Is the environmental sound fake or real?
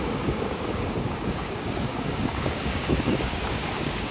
fake